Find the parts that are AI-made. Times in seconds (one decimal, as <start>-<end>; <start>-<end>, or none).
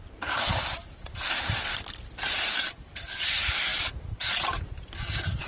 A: 0.8-1.6